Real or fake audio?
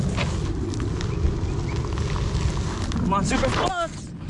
real